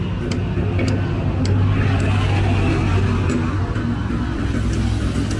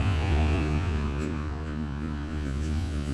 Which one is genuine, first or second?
first